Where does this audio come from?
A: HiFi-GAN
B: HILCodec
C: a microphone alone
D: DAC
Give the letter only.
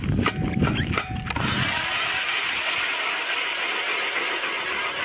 C